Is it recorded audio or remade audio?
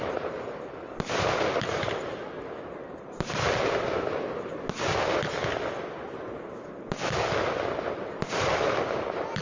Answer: recorded